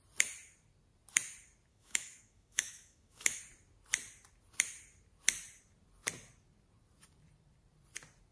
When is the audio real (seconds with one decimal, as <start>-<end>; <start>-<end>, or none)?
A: 0.0-1.7; 3.4-8.3